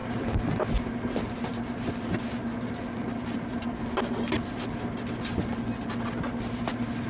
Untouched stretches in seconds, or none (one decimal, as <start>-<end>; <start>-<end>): 0.0-7.1